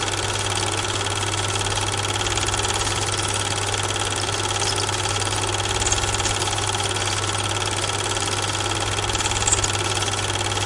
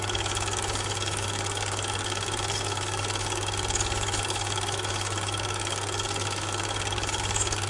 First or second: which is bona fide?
first